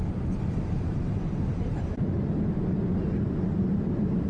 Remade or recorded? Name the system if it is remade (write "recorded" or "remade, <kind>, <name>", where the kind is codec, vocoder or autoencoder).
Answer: recorded